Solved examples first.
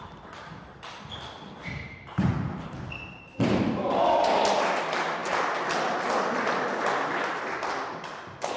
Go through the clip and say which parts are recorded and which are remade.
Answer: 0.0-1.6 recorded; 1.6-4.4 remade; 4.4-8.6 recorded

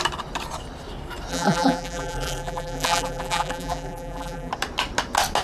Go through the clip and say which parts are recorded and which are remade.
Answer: 0.0-1.3 recorded; 1.3-4.5 remade; 4.5-5.4 recorded

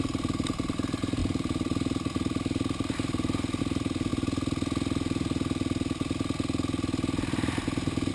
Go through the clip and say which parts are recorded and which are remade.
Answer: 0.0-4.1 remade; 4.1-8.1 recorded